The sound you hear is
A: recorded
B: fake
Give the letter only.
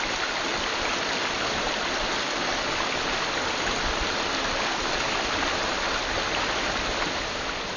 A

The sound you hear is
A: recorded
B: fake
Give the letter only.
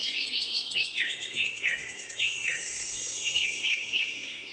B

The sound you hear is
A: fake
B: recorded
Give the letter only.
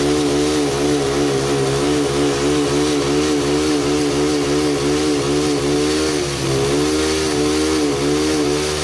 B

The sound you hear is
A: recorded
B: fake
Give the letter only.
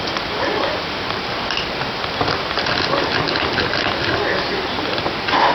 A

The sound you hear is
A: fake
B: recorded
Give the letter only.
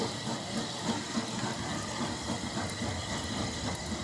B